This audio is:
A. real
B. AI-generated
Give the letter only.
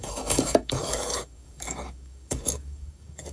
B